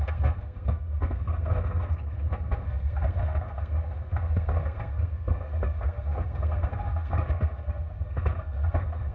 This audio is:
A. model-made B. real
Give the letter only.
A